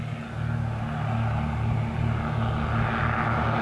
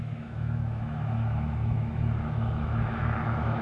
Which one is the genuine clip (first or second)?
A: first